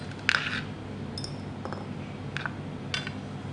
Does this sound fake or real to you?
real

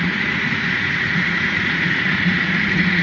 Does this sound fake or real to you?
fake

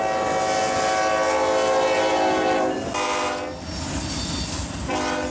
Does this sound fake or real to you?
real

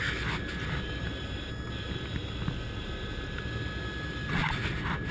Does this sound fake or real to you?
real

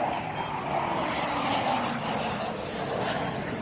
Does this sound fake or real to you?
real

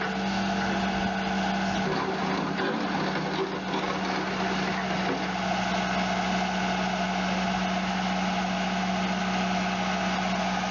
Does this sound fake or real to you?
real